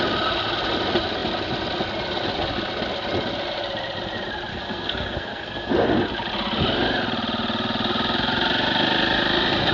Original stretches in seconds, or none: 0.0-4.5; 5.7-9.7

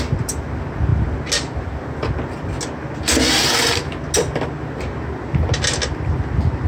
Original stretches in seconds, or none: 0.0-6.7

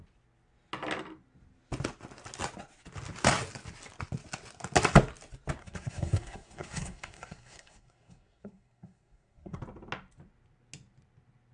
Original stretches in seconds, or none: 0.0-5.6; 9.6-11.5

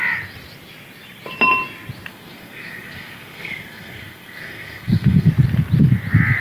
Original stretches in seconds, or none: 0.0-2.1; 5.3-6.4

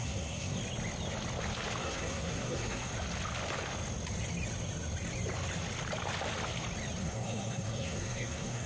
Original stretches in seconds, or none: 0.6-1.8; 2.9-7.0

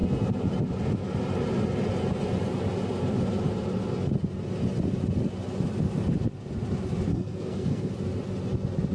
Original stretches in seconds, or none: 0.0-7.1; 7.9-8.9